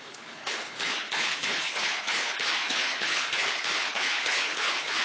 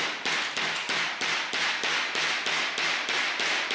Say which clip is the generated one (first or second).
first